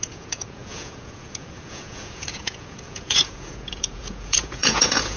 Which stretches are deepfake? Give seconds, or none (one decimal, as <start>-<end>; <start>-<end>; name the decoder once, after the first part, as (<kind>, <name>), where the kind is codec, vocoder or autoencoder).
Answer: 0.0-5.2 (vocoder, Vocos)